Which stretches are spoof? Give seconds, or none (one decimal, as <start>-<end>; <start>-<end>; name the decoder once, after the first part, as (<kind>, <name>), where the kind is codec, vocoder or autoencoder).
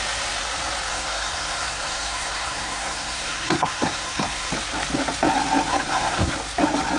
0.9-4.5 (codec, SNAC); 5.7-6.3